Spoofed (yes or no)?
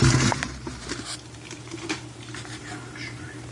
yes